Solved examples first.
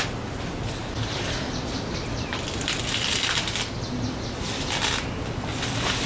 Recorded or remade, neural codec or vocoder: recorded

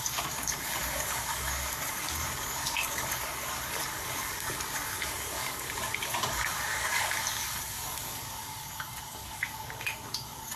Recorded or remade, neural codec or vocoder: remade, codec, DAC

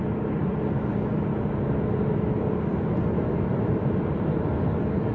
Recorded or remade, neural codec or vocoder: recorded